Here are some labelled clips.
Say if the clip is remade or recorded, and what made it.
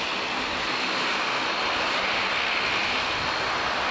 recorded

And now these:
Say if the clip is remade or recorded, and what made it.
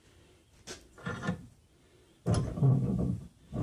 recorded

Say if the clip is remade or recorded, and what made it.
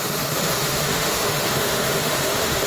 remade, autoencoder, DAC-VAE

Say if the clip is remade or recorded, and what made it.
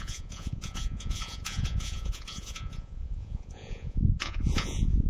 remade, vocoder, Vocos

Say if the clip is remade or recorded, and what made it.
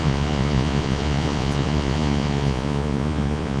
remade, vocoder, Vocos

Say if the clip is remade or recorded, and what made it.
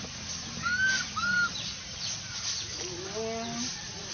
recorded